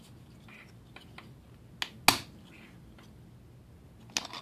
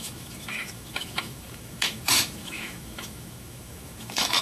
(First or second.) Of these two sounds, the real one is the first